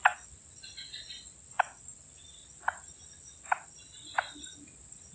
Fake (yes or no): no